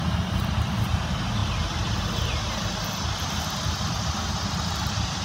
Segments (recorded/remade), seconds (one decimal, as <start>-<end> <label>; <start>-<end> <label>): 0.0-5.2 recorded